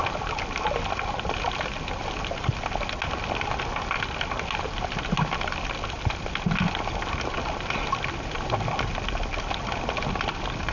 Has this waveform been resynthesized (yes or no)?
no